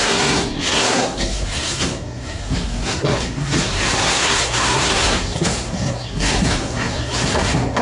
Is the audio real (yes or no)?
no